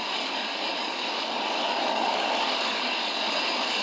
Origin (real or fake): fake